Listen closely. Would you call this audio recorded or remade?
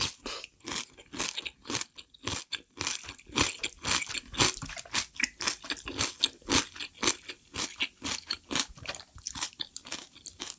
recorded